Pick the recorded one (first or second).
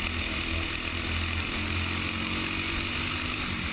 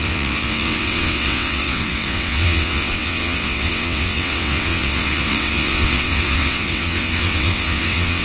first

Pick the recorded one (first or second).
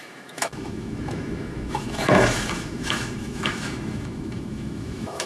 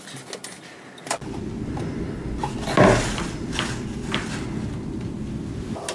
second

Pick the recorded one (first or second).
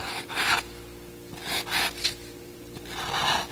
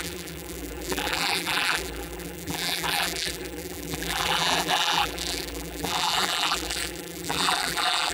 first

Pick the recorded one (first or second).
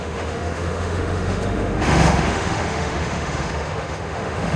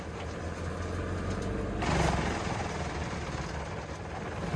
second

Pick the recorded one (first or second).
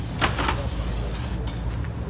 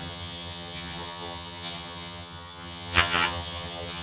first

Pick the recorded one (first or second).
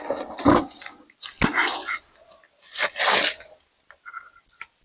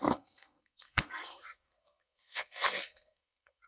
first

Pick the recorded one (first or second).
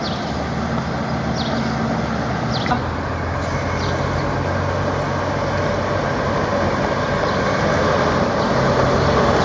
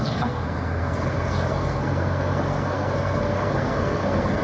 first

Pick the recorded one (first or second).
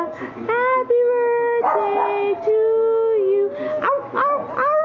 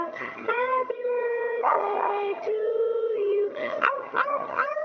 first